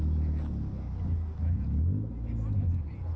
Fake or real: real